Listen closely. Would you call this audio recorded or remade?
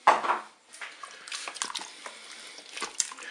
recorded